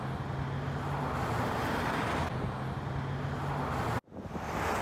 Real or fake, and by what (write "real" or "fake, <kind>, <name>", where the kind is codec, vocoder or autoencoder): real